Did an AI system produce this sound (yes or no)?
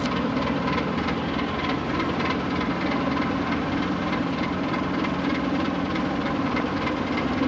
yes